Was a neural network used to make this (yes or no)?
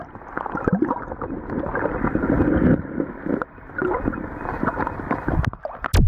no